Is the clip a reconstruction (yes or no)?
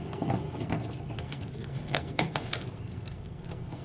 yes